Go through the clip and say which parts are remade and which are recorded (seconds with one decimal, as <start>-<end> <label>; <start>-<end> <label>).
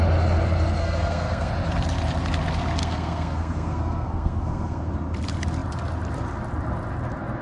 0.0-0.8 recorded; 0.8-1.5 remade; 1.5-2.8 recorded; 2.8-4.9 remade; 4.9-7.4 recorded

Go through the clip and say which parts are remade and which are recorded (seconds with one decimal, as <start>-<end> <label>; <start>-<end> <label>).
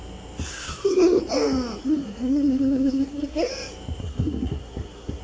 0.0-0.5 recorded; 0.5-1.2 remade; 1.2-1.8 recorded; 1.8-3.5 remade; 3.5-4.0 recorded; 4.0-5.2 remade